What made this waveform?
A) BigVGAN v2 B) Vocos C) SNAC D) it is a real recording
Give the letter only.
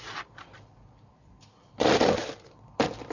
A